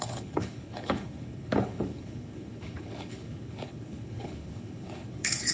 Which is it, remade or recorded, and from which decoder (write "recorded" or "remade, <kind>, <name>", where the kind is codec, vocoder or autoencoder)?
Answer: remade, codec, HILCodec